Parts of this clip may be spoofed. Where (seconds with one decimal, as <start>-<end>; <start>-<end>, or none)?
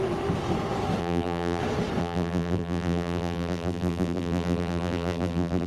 1.0-1.6; 2.0-5.7